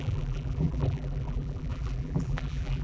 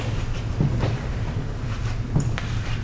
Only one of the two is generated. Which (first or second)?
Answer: first